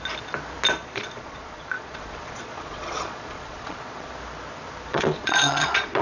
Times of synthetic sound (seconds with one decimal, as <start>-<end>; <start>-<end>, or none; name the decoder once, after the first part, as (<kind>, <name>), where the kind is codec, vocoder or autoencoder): 0.8-4.1 (vocoder, Vocos); 4.9-6.0